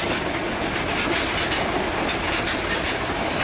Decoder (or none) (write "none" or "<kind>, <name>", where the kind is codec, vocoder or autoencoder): none